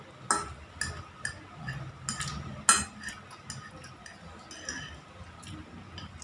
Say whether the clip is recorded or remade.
recorded